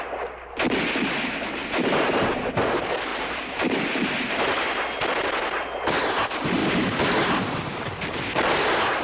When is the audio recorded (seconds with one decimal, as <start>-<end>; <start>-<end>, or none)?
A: 0.0-3.1; 4.1-9.0